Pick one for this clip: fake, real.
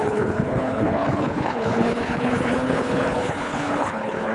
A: fake